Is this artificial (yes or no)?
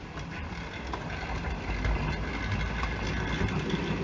no